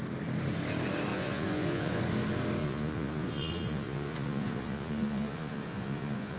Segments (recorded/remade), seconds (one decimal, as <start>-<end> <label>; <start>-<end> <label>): 0.0-1.1 recorded; 1.1-2.0 remade; 2.0-2.6 recorded; 2.6-6.4 remade

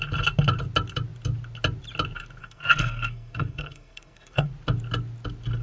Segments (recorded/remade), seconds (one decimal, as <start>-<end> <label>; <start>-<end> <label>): 0.0-2.4 recorded; 2.4-4.5 remade; 4.5-5.6 recorded

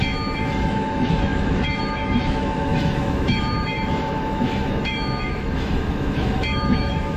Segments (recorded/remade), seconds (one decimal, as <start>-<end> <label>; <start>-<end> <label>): 0.0-7.2 remade

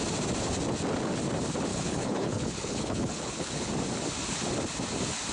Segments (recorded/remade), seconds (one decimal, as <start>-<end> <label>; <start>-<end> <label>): 0.0-1.7 recorded; 1.7-3.7 remade; 3.7-5.3 recorded

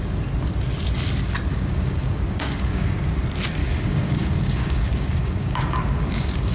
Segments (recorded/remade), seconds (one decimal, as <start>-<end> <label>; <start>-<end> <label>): 0.0-1.5 recorded; 1.5-3.1 remade; 3.1-3.6 recorded; 3.6-6.5 remade

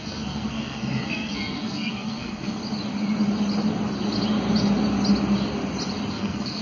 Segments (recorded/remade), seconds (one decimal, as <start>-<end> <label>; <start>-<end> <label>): 0.0-2.6 remade; 2.6-6.1 recorded; 6.1-6.6 remade